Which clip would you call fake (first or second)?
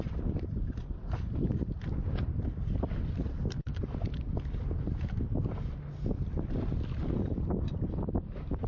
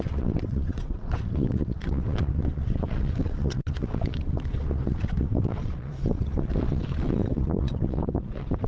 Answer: second